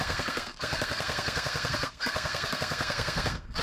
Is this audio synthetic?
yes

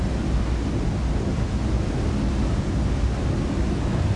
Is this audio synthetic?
no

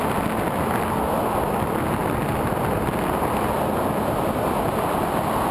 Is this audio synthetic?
no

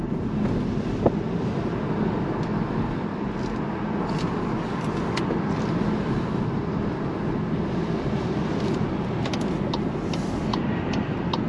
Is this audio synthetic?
no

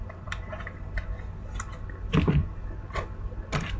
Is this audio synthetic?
no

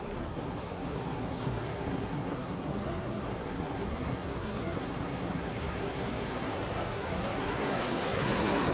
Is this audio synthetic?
yes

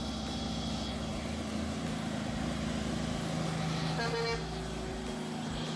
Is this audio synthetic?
no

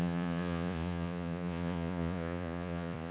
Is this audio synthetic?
yes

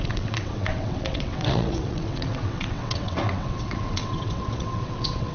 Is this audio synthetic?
yes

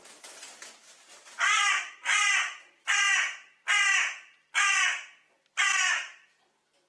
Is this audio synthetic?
no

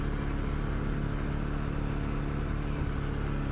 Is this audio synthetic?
no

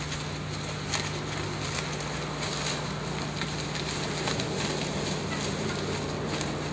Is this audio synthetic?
no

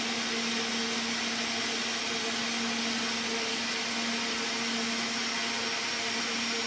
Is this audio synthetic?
no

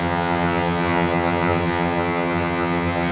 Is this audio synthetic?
yes